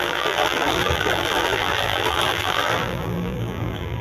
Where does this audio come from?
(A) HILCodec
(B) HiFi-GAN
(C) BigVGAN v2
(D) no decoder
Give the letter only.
C